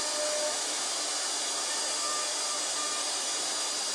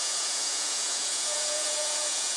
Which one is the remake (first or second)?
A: second